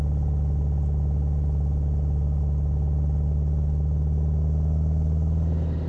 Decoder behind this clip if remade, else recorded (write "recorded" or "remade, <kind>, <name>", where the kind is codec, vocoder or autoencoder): recorded